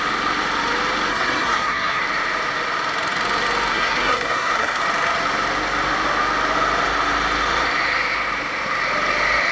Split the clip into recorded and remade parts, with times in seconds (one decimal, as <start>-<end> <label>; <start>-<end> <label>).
0.0-1.1 recorded; 1.1-2.0 remade; 2.0-3.7 recorded; 3.7-4.8 remade; 4.8-9.5 recorded